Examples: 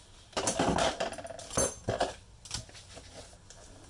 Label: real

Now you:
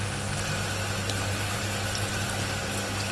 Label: real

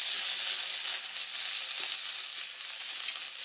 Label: real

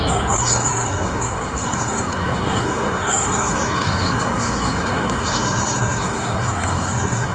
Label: fake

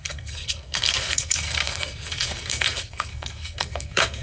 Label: fake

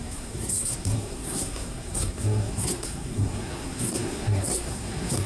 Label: fake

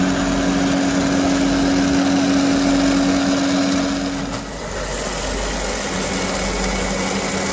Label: real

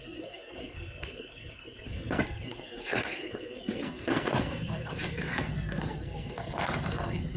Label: fake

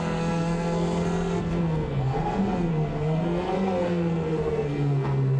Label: fake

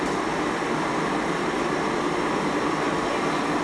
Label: real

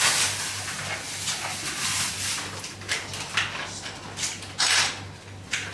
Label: real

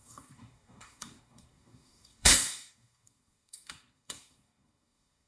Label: fake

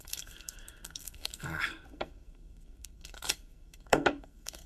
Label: fake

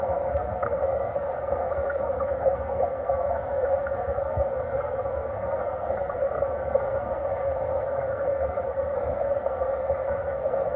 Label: fake